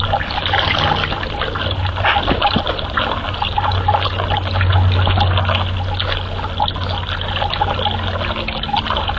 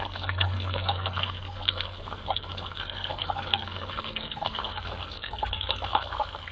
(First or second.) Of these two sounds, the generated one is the second